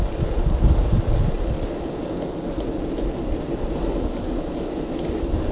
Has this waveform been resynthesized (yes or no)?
no